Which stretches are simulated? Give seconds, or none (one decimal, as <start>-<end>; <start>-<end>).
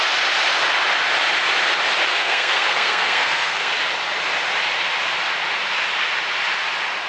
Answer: 2.1-3.7